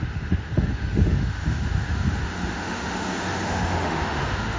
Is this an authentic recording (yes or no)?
no